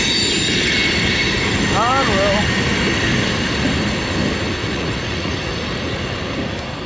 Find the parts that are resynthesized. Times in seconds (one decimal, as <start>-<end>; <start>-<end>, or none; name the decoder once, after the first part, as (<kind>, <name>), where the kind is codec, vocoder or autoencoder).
4.6-6.0 (vocoder, Vocos)